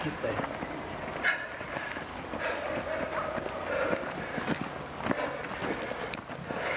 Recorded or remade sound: recorded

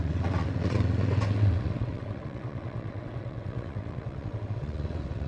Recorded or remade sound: remade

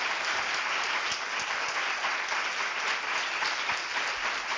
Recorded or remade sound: recorded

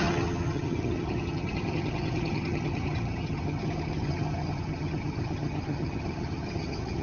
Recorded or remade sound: remade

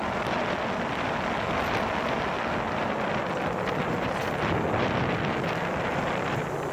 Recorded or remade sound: recorded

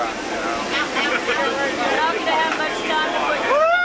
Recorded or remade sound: recorded